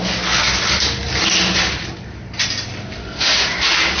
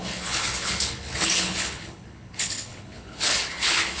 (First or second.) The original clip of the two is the first